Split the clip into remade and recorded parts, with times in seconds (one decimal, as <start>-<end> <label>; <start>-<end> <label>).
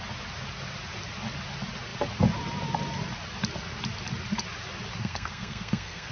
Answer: 0.0-5.0 recorded; 5.0-6.1 remade